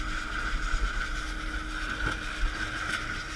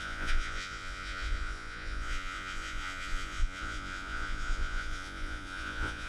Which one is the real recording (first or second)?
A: first